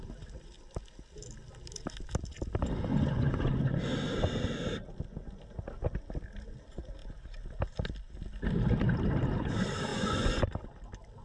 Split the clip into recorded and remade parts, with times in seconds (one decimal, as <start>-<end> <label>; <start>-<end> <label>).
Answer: 0.0-2.9 recorded; 2.9-3.8 remade; 3.8-9.9 recorded; 9.9-10.4 remade; 10.4-11.2 recorded